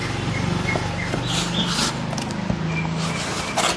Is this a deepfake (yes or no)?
no